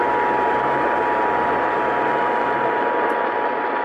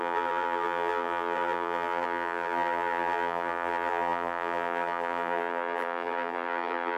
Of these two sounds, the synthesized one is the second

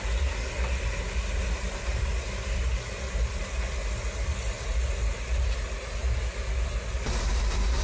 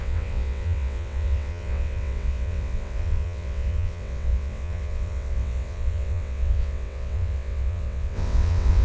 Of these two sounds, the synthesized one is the second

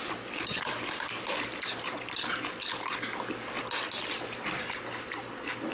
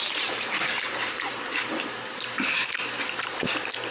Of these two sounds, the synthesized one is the second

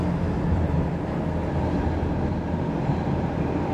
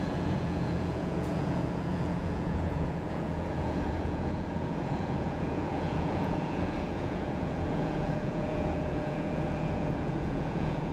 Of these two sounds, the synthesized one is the second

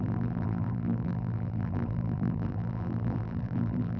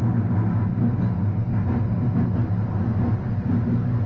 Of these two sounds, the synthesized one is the first